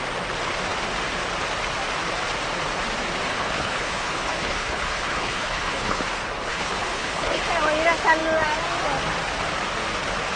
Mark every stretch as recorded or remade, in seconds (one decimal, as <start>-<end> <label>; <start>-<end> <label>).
0.0-3.3 recorded; 3.3-6.0 remade; 6.0-6.5 recorded; 6.5-7.4 remade; 7.4-10.4 recorded